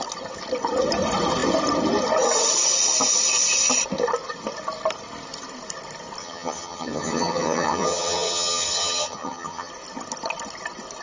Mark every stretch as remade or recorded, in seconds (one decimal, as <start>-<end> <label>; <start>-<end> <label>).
0.0-6.2 recorded; 6.2-9.7 remade; 9.7-11.0 recorded